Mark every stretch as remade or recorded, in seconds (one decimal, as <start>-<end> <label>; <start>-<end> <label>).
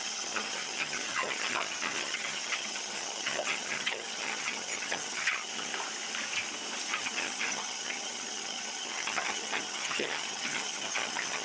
0.0-5.7 remade; 5.7-6.9 recorded; 6.9-11.4 remade